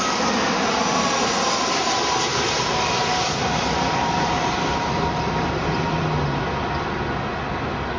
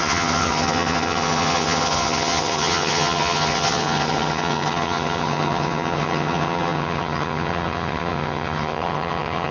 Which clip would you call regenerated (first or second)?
second